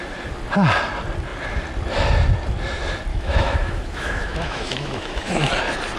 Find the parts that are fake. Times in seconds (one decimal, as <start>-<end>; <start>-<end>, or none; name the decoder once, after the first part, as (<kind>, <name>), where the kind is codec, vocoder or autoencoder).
3.1-5.5 (autoencoder, DAC-VAE)